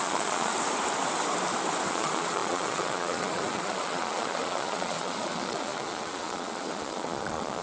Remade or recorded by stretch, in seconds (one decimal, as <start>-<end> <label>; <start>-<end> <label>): 0.0-0.5 remade; 0.5-1.9 recorded; 1.9-7.6 remade